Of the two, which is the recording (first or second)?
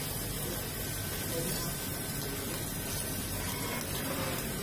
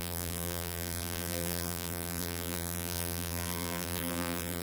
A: first